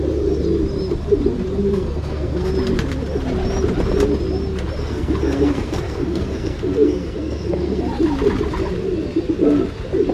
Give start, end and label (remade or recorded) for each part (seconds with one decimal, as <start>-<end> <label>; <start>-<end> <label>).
0.0-1.7 recorded; 1.7-2.5 remade; 2.5-4.8 recorded; 4.8-7.8 remade; 7.8-10.1 recorded